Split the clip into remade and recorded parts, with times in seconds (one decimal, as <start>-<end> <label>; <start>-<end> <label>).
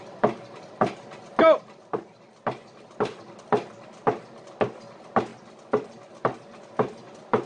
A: 0.0-7.5 recorded